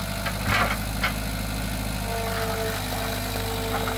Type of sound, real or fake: real